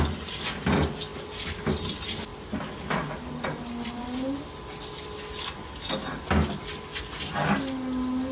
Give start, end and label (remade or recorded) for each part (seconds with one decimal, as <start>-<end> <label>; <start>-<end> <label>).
0.0-8.3 recorded